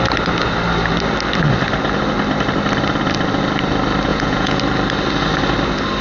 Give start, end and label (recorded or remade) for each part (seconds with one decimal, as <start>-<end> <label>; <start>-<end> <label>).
0.0-4.1 recorded; 4.1-4.6 remade; 4.6-6.0 recorded